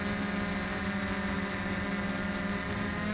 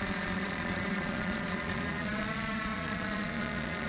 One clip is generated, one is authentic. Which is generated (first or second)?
second